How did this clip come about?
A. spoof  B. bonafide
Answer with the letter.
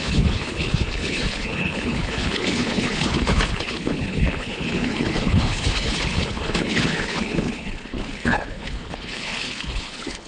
A